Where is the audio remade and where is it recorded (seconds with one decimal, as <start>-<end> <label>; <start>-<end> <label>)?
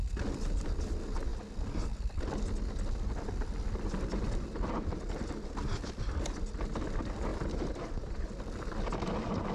0.0-7.3 recorded; 7.3-8.6 remade; 8.6-9.5 recorded